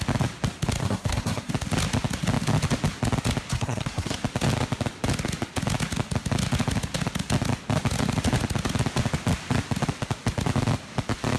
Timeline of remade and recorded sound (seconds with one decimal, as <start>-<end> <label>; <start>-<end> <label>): 0.0-0.8 recorded; 0.8-1.5 remade; 1.5-3.5 recorded; 3.5-4.2 remade; 4.2-11.4 recorded